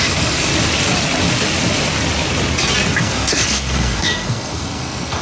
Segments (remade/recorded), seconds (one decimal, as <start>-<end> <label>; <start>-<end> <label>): 0.0-0.5 remade; 0.5-3.0 recorded; 3.0-5.2 remade